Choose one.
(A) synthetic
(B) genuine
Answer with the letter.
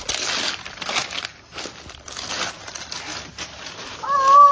B